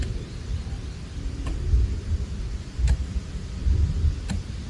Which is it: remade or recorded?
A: recorded